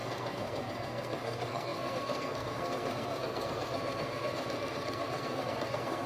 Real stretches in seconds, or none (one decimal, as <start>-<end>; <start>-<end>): none